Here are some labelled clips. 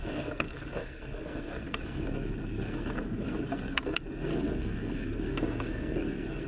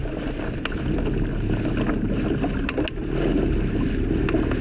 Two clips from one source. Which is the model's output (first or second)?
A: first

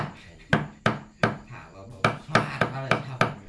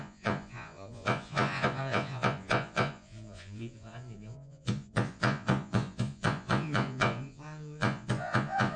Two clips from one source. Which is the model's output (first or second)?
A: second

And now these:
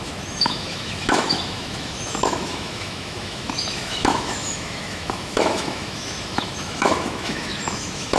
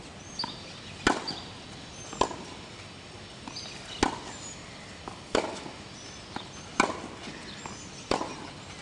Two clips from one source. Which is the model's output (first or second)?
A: first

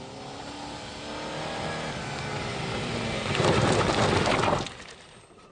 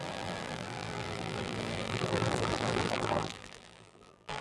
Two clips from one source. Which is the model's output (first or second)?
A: second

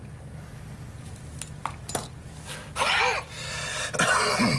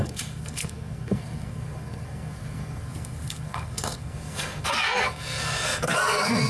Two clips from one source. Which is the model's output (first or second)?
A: second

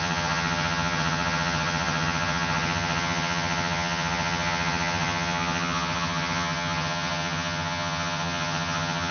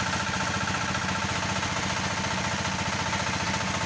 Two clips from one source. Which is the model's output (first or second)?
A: first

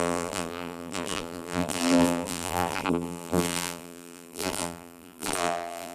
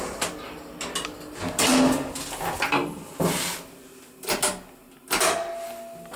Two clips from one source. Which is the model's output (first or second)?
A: first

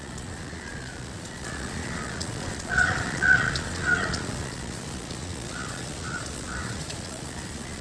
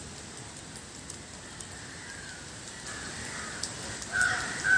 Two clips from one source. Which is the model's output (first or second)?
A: first